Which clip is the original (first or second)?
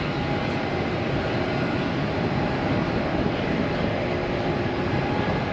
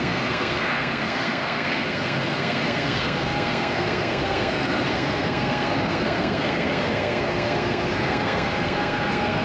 first